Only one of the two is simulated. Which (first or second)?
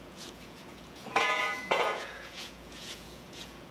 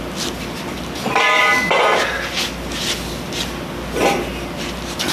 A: first